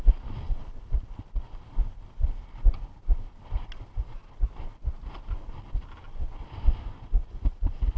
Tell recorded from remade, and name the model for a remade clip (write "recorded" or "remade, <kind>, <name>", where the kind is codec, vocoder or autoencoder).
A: recorded